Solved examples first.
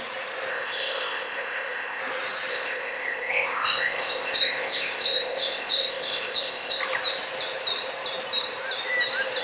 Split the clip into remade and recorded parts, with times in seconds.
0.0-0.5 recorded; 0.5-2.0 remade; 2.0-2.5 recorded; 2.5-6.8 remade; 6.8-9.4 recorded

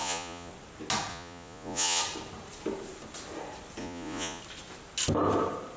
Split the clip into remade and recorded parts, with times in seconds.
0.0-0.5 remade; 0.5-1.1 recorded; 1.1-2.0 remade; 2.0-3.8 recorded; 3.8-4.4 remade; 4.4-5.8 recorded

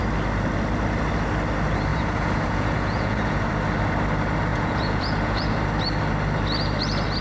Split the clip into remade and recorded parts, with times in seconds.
0.0-1.9 recorded; 1.9-3.5 remade; 3.5-4.5 recorded; 4.5-5.6 remade; 5.6-7.2 recorded

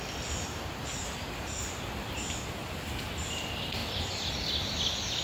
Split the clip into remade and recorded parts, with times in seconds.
0.0-5.2 recorded